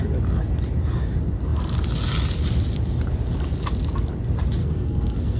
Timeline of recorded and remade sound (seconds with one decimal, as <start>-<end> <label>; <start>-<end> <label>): 0.0-4.6 recorded; 4.6-5.4 remade